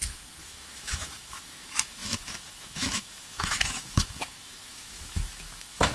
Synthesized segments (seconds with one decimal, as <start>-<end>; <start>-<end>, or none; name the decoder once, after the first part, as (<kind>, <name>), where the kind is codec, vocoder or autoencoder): 0.0-5.9 (autoencoder, DAC-VAE)